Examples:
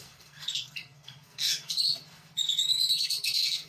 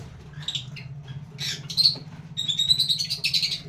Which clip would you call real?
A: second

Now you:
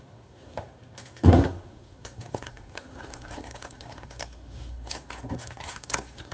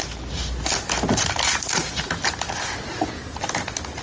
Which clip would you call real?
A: second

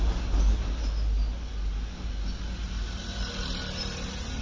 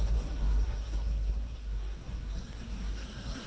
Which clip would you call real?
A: first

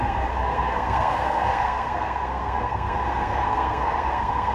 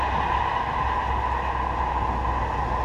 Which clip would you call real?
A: second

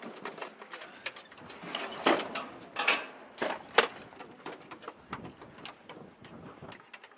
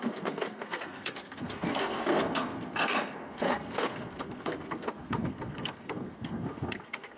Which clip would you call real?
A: first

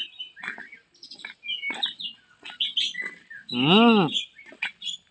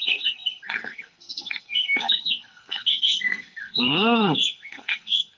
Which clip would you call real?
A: first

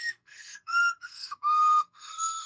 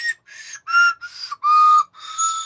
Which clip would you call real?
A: second